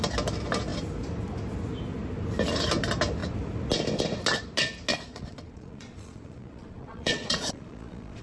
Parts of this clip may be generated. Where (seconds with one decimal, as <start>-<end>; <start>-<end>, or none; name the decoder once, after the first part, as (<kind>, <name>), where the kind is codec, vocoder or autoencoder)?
4.9-8.2 (vocoder, Vocos)

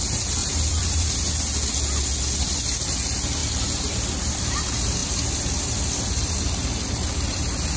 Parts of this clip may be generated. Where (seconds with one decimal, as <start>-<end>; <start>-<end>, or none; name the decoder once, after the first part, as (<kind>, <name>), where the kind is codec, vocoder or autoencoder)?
0.4-1.3 (vocoder, BigVGAN v2); 3.4-4.3; 5.0-7.8

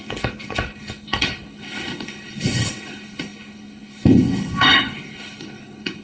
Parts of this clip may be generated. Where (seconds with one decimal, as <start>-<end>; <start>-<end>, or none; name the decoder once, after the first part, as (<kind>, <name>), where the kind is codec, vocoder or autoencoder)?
0.0-6.0 (codec, HILCodec)

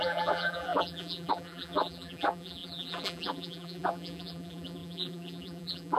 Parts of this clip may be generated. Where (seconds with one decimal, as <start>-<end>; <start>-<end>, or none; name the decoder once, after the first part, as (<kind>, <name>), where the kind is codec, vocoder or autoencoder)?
0.0-6.0 (vocoder, BigVGAN v2)